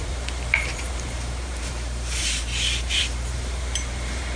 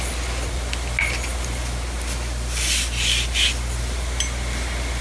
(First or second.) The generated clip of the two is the first